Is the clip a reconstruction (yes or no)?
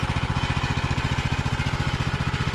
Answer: no